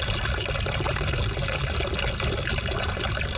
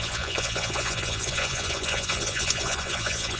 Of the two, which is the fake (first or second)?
second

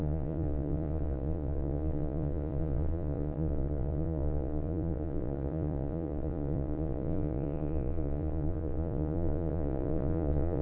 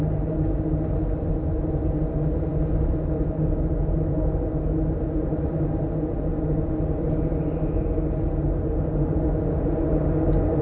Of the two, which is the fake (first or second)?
first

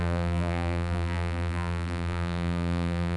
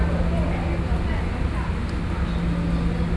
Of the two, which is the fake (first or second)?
first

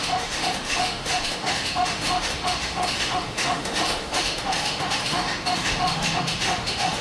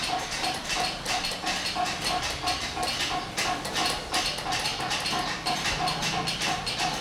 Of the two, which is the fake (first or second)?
first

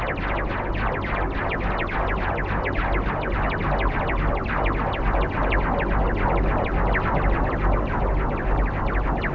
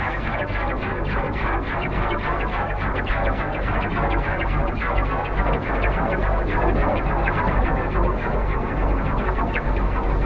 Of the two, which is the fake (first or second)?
second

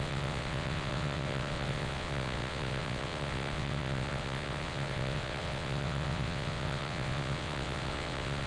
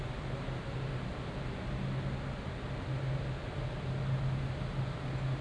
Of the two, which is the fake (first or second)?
first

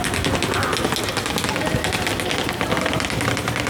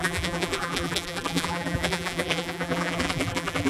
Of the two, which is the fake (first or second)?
second